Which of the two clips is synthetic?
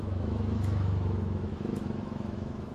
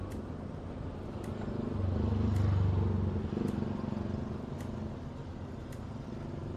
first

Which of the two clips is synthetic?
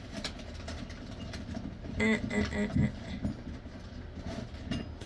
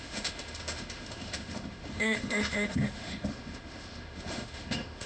second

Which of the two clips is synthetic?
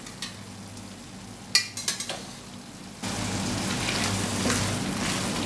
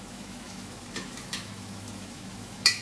second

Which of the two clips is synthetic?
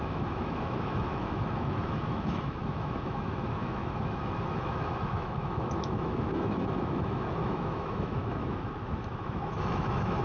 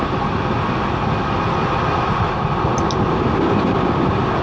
first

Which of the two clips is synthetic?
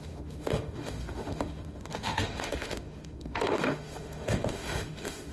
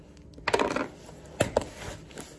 first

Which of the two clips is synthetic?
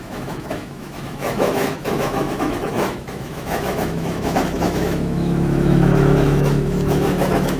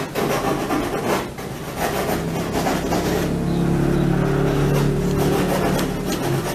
first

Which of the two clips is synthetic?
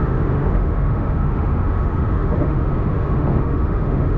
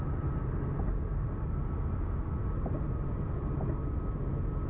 first